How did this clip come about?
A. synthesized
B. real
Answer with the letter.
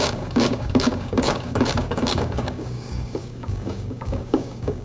A